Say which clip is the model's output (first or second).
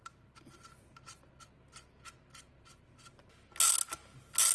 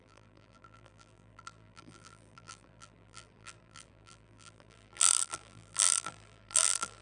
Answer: second